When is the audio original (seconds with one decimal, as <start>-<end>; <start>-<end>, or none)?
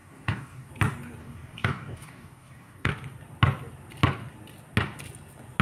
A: 0.7-1.2; 2.9-5.6